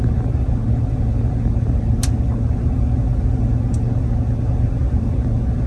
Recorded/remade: recorded